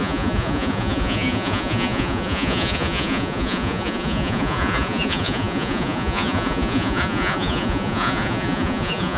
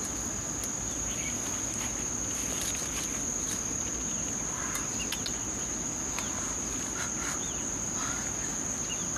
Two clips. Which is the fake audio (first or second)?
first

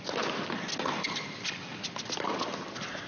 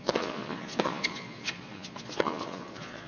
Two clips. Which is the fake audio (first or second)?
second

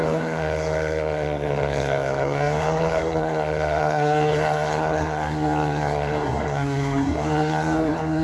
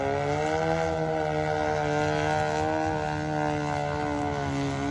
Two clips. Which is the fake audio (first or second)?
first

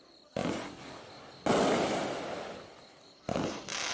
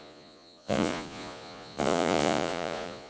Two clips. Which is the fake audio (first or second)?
second